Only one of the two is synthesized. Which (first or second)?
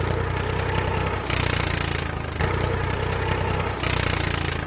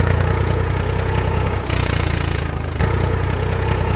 second